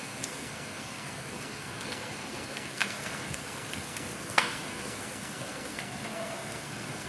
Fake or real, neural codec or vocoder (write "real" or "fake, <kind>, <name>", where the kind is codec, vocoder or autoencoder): fake, codec, SNAC